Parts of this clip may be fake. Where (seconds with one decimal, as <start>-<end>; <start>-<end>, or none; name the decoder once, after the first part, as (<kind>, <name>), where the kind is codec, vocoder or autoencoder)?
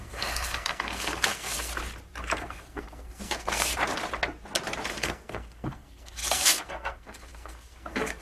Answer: 0.0-1.7 (codec, SNAC); 2.2-3.7; 4.9-8.2